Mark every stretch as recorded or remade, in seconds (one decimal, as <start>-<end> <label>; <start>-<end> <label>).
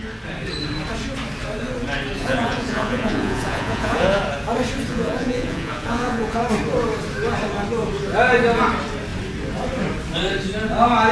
0.0-2.2 recorded; 2.2-4.2 remade; 4.2-4.9 recorded; 4.9-6.4 remade; 6.4-11.1 recorded